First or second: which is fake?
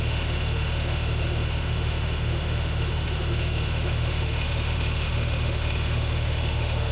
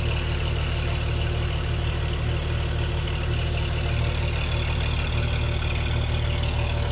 first